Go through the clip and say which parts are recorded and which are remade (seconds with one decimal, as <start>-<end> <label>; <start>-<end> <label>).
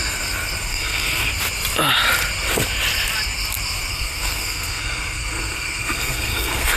0.0-0.7 recorded; 0.7-1.3 remade; 1.3-3.9 recorded; 3.9-6.8 remade